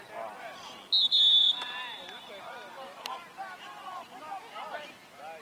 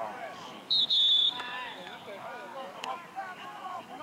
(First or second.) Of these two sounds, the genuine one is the first